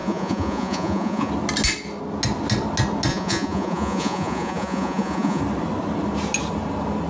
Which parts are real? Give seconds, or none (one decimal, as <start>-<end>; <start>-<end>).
1.3-3.1; 5.4-7.1